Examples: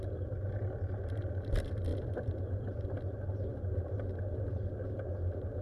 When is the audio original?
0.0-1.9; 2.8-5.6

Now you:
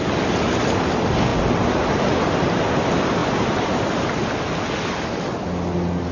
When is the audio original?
0.0-6.1

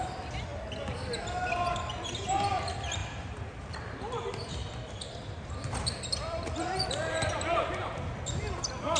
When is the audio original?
0.0-3.0; 7.3-9.0

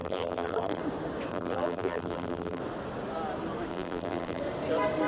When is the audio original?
0.8-1.3; 2.6-3.7; 4.4-5.1

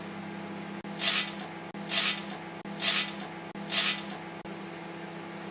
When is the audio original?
0.0-5.5